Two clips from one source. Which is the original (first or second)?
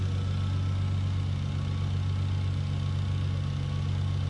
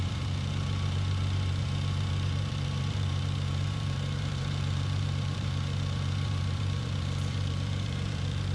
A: first